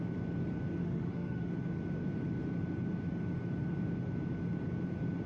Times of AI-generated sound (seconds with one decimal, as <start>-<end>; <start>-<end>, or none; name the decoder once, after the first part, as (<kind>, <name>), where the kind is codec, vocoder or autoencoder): 0.8-1.5 (autoencoder, DAC-VAE)